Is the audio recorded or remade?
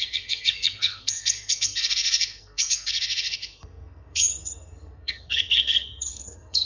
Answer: remade